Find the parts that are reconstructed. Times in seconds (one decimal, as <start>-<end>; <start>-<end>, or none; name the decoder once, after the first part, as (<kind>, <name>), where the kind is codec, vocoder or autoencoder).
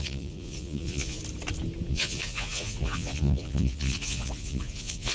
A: 0.0-1.2 (vocoder, Vocos); 1.9-5.1